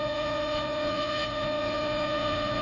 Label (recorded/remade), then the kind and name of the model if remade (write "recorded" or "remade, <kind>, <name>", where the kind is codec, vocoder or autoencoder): remade, vocoder, Vocos